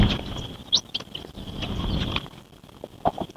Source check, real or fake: real